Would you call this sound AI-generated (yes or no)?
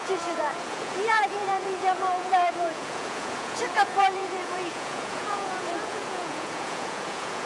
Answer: yes